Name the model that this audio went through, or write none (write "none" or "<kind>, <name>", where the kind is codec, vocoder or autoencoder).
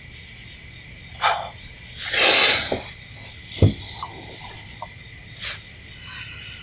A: none